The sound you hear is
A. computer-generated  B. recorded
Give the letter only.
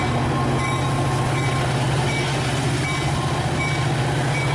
B